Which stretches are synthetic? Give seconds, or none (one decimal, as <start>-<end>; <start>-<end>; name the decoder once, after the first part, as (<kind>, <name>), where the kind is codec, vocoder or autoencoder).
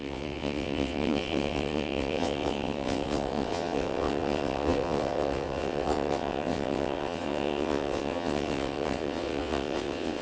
0.0-10.2 (vocoder, WaveNeXt)